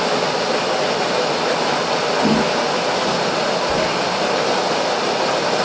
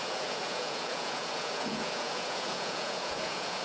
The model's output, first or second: second